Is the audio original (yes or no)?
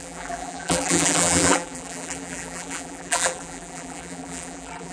no